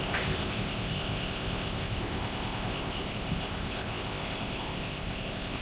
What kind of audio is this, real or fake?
fake